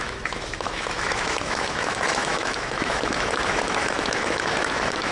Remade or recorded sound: remade